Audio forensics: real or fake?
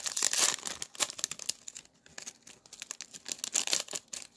real